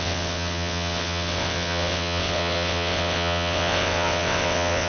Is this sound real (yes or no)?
no